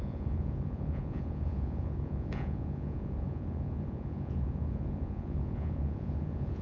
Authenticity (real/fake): fake